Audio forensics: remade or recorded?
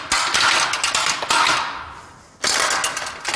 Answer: recorded